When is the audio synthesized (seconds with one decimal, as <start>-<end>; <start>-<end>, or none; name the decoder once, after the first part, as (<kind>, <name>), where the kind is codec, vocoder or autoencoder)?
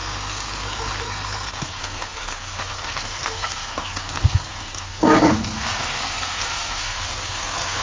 0.0-7.8 (codec, SNAC)